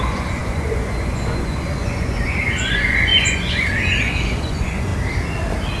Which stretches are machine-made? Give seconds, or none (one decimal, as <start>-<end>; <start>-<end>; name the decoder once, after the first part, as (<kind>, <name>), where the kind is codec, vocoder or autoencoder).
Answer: 0.0-4.9 (vocoder, Vocos)